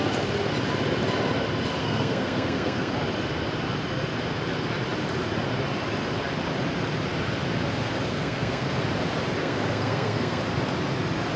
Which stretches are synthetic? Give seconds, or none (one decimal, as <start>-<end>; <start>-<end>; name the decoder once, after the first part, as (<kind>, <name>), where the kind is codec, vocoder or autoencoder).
1.8-2.9 (codec, SNAC); 8.1-8.8; 9.4-10.4